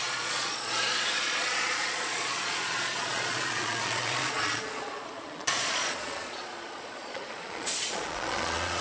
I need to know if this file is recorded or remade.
remade